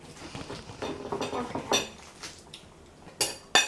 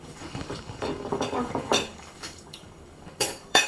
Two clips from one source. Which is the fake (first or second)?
second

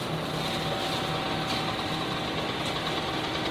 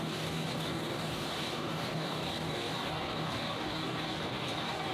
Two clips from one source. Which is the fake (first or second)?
second